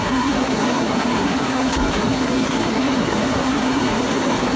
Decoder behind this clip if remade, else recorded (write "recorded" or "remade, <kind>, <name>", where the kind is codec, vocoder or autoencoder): remade, codec, SNAC